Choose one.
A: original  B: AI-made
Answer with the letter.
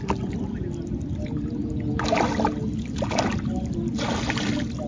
A